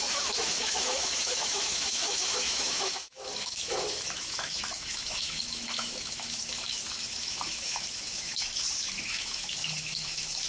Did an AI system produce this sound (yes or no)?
yes